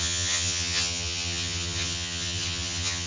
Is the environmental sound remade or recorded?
remade